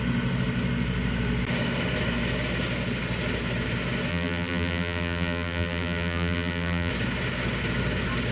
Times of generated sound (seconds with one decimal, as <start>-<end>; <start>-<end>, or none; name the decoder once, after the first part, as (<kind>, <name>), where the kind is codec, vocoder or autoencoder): 4.1-6.9 (vocoder, BigVGAN v2)